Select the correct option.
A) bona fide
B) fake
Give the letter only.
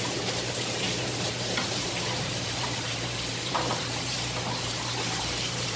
B